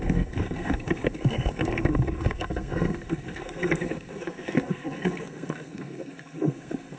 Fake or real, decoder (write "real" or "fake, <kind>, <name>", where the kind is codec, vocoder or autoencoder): fake, codec, SNAC